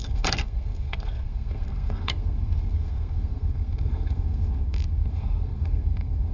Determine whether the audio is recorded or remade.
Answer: remade